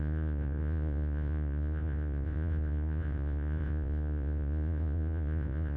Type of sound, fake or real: fake